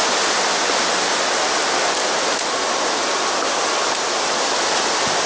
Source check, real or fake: real